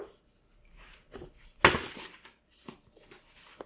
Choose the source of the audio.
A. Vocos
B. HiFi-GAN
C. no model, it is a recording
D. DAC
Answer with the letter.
C